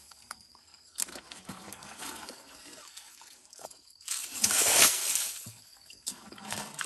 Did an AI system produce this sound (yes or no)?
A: yes